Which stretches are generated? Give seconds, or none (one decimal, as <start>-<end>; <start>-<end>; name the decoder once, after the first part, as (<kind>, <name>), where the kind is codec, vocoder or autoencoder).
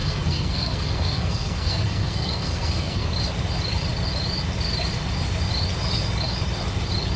0.0-3.1 (codec, SNAC)